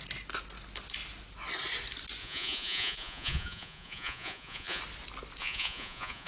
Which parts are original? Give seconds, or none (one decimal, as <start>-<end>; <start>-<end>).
0.0-2.2; 4.8-5.4